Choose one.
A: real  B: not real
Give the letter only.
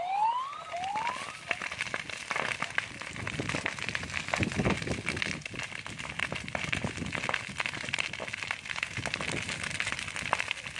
A